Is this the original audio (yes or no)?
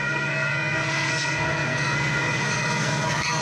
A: no